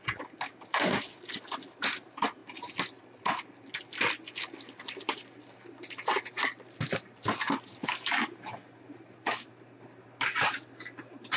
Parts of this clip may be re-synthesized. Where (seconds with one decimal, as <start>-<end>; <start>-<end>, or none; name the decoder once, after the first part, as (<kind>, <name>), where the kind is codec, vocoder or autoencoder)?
none